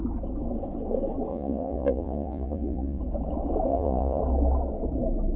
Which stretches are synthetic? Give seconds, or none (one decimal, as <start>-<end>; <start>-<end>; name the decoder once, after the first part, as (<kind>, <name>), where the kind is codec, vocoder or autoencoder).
1.3-3.0 (vocoder, Vocos); 3.7-4.2